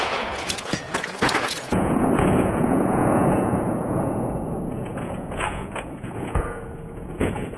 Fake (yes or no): yes